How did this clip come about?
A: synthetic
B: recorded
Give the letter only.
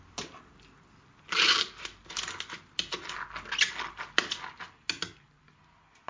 B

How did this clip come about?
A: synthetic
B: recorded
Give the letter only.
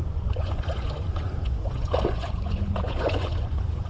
A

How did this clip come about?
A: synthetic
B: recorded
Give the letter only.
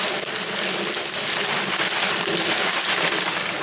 B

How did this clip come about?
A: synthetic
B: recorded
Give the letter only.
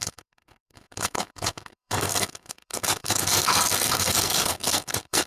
A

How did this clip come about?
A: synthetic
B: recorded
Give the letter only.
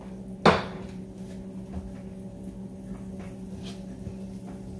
B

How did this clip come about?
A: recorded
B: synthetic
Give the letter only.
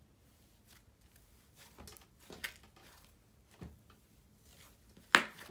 A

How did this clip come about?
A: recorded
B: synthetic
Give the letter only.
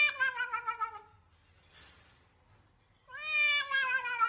A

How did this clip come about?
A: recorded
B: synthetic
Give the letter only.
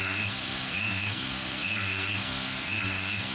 B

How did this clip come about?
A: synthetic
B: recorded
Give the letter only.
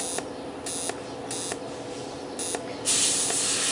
B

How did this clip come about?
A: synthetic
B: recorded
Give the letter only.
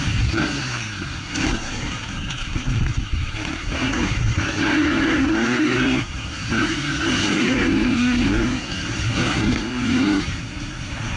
A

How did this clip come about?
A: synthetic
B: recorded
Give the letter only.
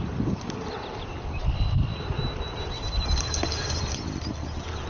B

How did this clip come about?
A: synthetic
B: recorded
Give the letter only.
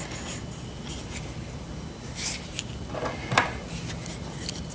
B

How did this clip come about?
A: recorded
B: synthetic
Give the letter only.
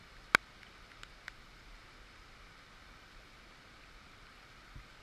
A